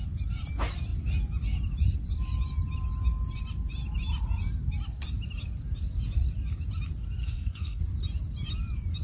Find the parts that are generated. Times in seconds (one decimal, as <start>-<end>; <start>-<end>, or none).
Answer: 7.2-7.8